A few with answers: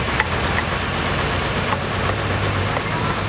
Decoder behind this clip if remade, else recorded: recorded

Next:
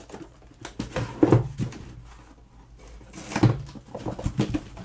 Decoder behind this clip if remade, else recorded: recorded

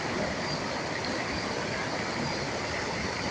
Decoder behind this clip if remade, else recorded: recorded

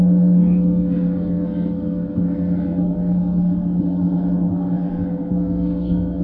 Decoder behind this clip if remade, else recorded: remade, codec, SNAC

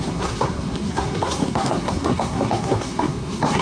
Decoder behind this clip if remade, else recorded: remade, codec, SNAC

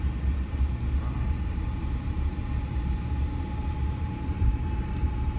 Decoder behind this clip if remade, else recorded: recorded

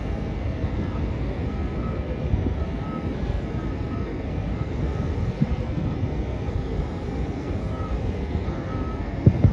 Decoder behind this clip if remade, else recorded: remade, codec, SNAC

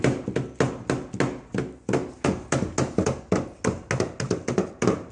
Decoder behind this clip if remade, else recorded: recorded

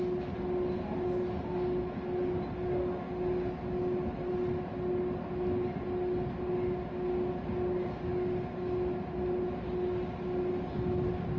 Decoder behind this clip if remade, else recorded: recorded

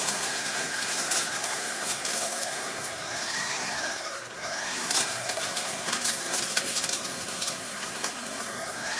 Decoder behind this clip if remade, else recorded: remade, codec, SNAC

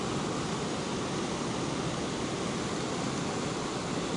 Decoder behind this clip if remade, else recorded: recorded